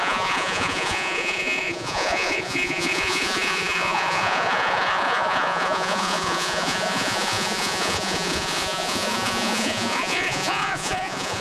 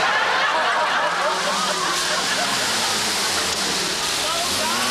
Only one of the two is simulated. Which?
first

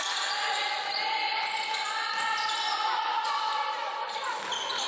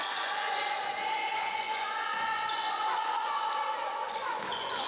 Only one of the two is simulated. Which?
second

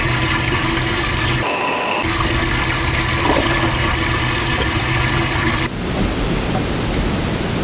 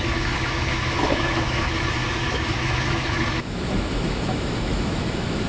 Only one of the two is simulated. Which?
second